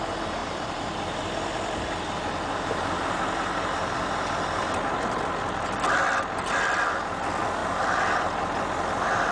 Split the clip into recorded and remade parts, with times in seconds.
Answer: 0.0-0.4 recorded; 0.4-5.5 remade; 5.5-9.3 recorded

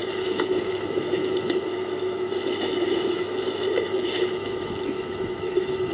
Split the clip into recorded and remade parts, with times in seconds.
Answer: 0.0-5.9 remade

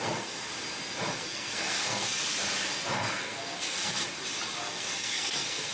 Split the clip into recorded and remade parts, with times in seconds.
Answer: 0.0-0.5 remade; 0.5-1.1 recorded; 1.1-2.2 remade; 2.2-3.0 recorded; 3.0-4.0 remade; 4.0-4.6 recorded; 4.6-5.7 remade